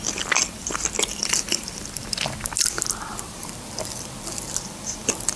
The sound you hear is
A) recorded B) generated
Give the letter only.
B